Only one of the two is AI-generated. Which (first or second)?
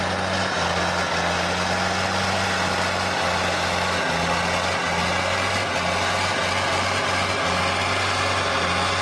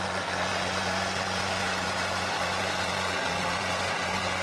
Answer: second